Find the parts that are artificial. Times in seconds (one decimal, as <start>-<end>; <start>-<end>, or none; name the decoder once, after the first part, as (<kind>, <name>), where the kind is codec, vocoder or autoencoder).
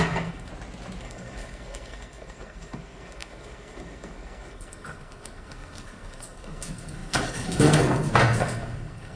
0.0-0.5 (codec, SNAC); 1.0-9.2